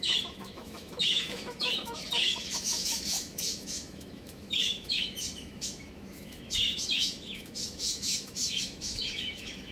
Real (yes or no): no